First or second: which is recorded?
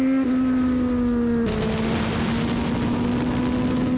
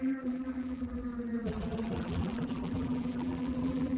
first